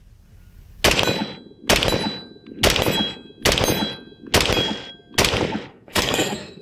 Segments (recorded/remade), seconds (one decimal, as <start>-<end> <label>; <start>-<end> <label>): 0.0-5.7 recorded; 5.7-6.6 remade